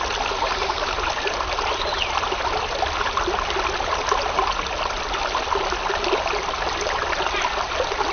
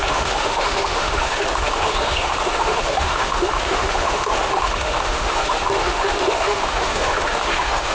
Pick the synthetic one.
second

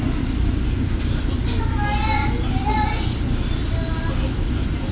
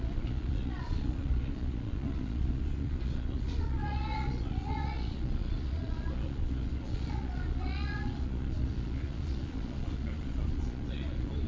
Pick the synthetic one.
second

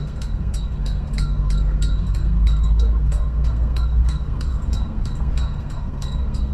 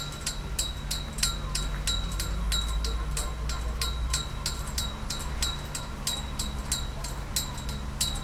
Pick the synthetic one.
first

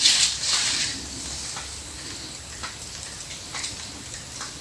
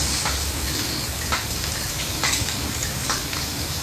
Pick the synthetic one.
second